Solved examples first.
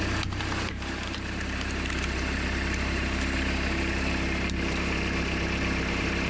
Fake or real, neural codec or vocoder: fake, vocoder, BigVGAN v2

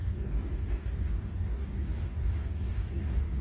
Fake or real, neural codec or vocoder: fake, codec, DAC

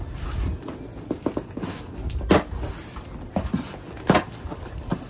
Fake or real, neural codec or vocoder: real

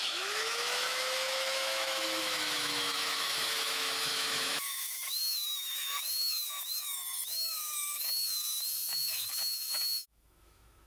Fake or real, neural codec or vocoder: fake, autoencoder, DAC-VAE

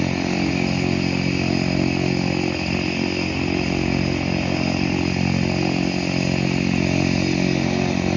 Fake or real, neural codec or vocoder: real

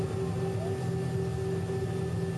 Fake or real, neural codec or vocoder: real